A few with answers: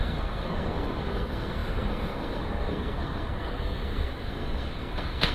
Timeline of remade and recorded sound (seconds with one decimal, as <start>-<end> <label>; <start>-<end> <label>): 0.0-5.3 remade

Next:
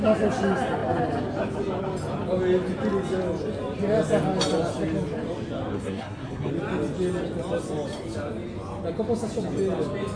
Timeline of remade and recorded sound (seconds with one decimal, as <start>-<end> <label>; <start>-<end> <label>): 0.0-5.7 recorded; 5.7-6.5 remade; 6.5-10.2 recorded

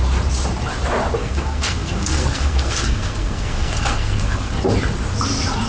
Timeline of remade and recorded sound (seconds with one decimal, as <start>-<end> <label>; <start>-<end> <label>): 0.0-1.2 recorded; 1.2-4.6 remade; 4.6-5.7 recorded

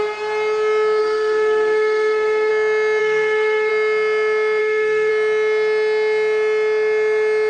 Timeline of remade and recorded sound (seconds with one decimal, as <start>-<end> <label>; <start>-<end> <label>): 0.0-1.0 recorded; 1.0-2.5 remade; 2.5-3.0 recorded; 3.0-3.7 remade; 3.7-4.6 recorded; 4.6-5.1 remade; 5.1-7.5 recorded

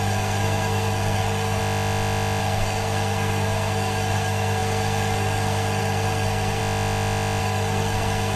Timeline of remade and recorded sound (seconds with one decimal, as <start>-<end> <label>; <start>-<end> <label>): 0.0-1.6 remade; 1.6-2.4 recorded; 2.4-6.6 remade; 6.6-7.4 recorded; 7.4-8.4 remade

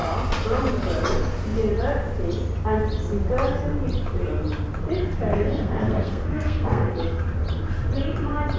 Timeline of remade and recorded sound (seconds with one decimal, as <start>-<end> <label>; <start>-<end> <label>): 0.0-5.3 recorded; 5.3-7.2 remade; 7.2-8.6 recorded